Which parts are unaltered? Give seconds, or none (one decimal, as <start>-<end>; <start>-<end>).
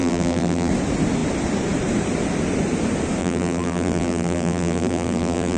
0.7-3.2